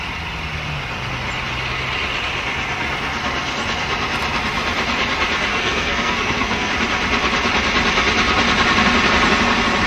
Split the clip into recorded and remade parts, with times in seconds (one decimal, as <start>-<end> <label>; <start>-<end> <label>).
0.0-5.5 recorded; 5.5-6.7 remade; 6.7-9.9 recorded